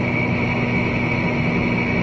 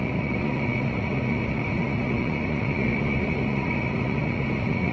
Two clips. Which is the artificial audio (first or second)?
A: second